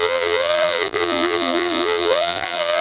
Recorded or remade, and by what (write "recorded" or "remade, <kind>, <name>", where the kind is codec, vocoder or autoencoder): remade, vocoder, BigVGAN v2